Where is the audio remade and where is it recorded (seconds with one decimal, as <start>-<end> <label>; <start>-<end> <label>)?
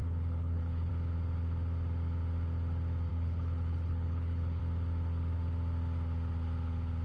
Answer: 0.0-0.9 remade; 0.9-3.1 recorded; 3.1-4.6 remade; 4.6-7.0 recorded